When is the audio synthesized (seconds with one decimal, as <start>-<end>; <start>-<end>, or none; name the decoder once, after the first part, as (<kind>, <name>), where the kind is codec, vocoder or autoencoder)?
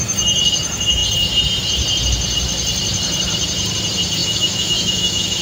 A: 4.2-5.4 (autoencoder, DAC-VAE)